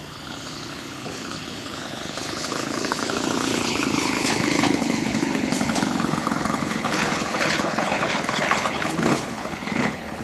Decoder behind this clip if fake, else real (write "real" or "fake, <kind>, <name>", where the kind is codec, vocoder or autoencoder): fake, codec, HILCodec